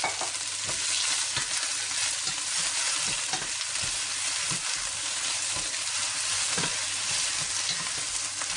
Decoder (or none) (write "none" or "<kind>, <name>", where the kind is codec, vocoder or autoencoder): none